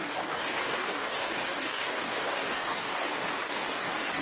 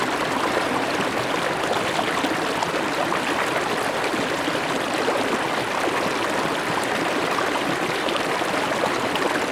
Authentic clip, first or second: second